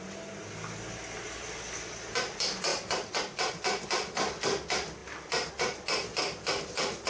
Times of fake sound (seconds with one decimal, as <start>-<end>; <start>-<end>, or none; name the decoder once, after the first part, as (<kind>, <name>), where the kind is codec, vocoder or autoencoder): none